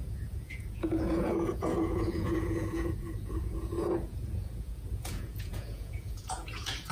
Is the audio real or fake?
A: fake